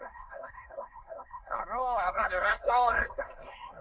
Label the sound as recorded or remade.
remade